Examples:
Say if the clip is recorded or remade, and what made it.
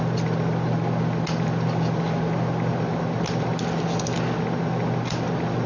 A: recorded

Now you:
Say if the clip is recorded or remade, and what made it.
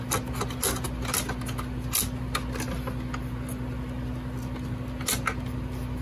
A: recorded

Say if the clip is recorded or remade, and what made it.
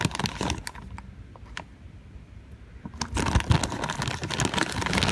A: recorded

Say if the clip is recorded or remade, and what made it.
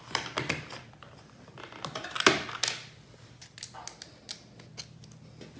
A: recorded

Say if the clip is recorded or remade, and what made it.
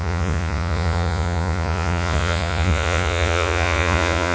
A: remade, vocoder, Vocos